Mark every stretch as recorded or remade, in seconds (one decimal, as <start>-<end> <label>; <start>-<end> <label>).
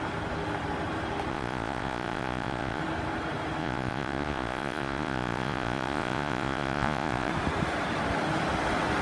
0.0-1.3 recorded; 1.3-2.8 remade; 2.8-3.6 recorded; 3.6-7.3 remade; 7.3-9.0 recorded